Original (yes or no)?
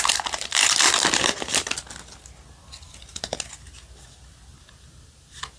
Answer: yes